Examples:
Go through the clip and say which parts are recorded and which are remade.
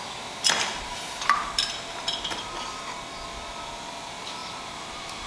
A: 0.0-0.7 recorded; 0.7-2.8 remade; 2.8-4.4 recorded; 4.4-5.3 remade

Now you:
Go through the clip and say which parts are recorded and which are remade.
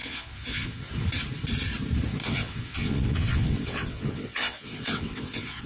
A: 0.0-0.8 remade; 0.8-2.2 recorded; 2.2-5.7 remade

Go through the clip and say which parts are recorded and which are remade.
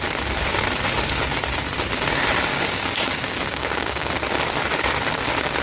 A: 0.0-2.5 recorded; 2.5-4.1 remade; 4.1-5.6 recorded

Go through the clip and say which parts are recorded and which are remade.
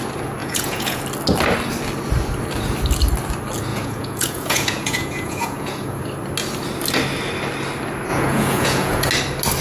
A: 0.0-0.4 recorded; 0.4-1.0 remade; 1.0-3.7 recorded; 3.7-6.0 remade; 6.0-8.1 recorded; 8.1-9.1 remade; 9.1-9.6 recorded